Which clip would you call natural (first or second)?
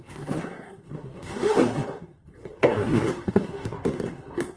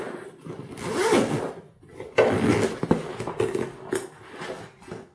second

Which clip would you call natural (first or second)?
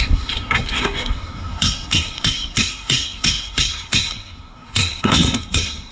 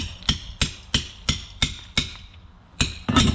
second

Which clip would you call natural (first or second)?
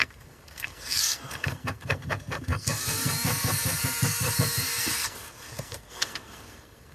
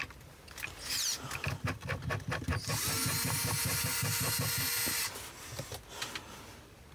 second